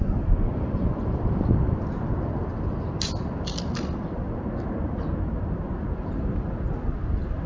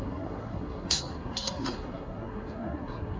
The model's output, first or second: second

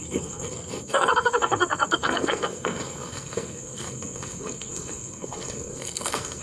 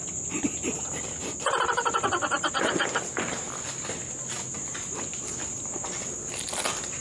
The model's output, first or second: first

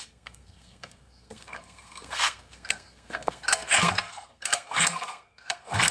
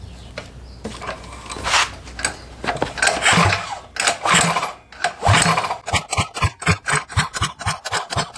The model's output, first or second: first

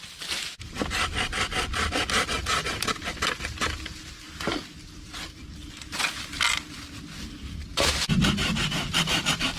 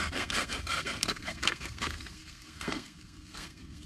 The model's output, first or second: second